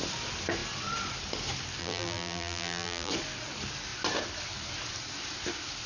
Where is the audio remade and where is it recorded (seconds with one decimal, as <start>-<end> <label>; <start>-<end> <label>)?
0.0-1.8 recorded; 1.8-3.1 remade; 3.1-5.9 recorded